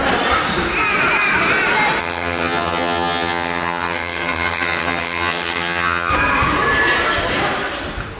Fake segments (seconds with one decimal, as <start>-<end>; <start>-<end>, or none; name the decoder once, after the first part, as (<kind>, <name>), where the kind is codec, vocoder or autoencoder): 2.0-6.1 (vocoder, HiFi-GAN)